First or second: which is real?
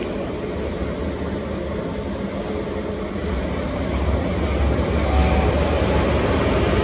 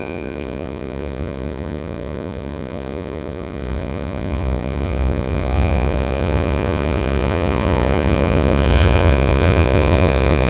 first